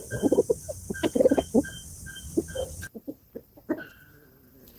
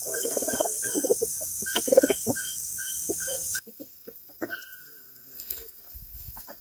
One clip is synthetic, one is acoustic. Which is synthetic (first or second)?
second